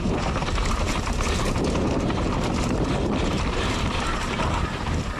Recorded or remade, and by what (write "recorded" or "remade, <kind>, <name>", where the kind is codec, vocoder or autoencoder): remade, vocoder, BigVGAN v2